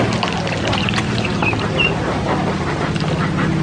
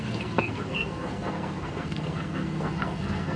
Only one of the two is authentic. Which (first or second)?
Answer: first